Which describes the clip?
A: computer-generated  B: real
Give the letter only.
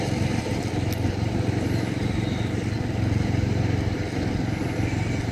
B